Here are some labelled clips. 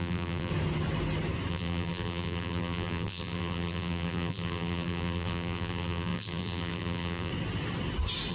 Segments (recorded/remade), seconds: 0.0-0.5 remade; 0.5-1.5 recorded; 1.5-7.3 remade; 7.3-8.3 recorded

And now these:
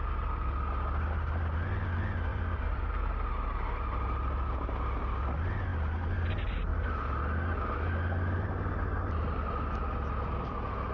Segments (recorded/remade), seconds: 0.0-2.3 recorded; 2.3-2.8 remade; 2.8-10.9 recorded

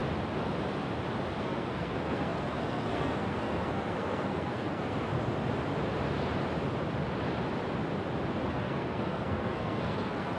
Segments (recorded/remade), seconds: 0.0-1.4 recorded; 1.4-5.1 remade; 5.1-8.5 recorded; 8.5-10.4 remade

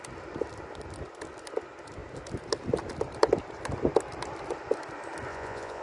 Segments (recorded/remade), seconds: 0.0-5.3 recorded; 5.3-5.8 remade

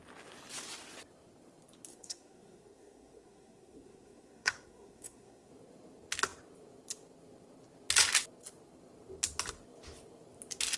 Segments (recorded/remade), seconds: 0.0-1.9 recorded; 1.9-5.5 remade; 5.5-10.8 recorded

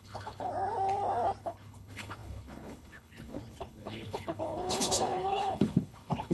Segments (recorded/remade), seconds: 0.0-0.5 remade; 0.5-1.4 recorded; 1.4-6.3 remade

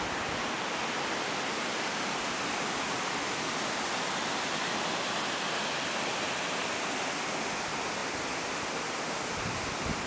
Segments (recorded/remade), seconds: 0.0-10.1 recorded